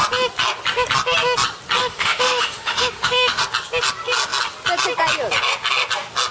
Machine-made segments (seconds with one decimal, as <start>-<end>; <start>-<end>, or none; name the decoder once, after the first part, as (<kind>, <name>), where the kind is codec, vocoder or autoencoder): 1.8-3.4 (autoencoder, DAC-VAE)

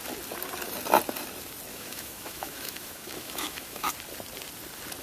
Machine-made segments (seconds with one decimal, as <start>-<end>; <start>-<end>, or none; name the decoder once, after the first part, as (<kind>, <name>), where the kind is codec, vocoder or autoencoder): 1.7-3.9 (autoencoder, DAC-VAE)